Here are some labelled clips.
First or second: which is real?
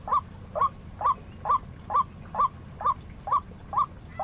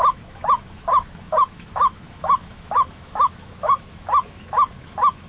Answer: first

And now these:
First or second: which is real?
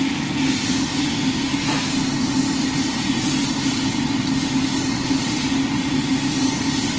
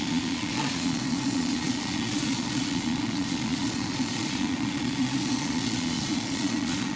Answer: first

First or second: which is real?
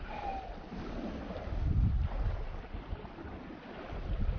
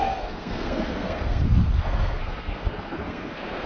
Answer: first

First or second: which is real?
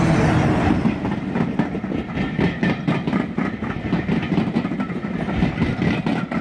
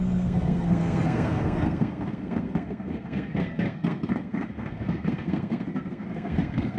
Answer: first